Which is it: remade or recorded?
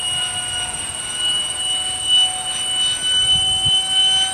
recorded